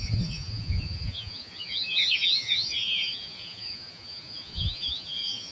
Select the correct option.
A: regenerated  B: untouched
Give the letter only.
A